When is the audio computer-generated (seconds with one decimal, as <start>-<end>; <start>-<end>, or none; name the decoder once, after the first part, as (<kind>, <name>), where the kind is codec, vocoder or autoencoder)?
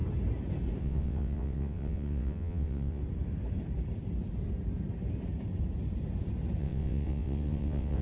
0.8-3.0 (vocoder, WaveNeXt); 6.6-8.0